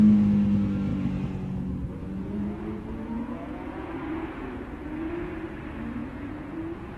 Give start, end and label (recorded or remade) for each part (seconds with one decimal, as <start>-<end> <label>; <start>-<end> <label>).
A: 0.0-0.9 recorded; 0.9-5.1 remade; 5.1-6.0 recorded; 6.0-7.0 remade